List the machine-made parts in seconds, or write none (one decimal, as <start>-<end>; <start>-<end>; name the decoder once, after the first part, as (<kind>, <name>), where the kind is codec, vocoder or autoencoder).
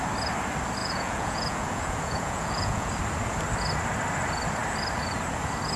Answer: 0.8-2.9 (vocoder, Vocos)